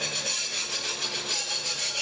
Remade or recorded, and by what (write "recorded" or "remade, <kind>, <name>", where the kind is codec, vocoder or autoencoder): remade, vocoder, BigVGAN v2